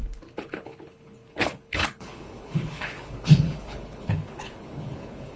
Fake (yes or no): yes